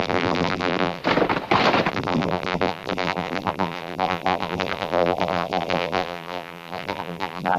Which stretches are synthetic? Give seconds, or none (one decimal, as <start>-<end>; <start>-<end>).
0.0-1.0; 1.9-7.6